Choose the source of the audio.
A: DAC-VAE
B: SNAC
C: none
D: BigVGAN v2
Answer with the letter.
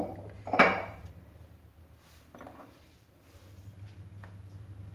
D